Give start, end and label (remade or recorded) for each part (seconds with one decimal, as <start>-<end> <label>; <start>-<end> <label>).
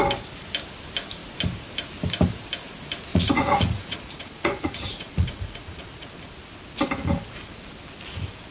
0.0-3.1 recorded; 3.1-6.1 remade; 6.1-8.5 recorded